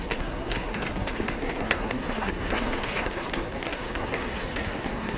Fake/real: fake